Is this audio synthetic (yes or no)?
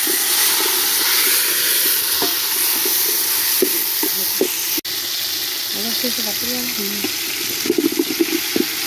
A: no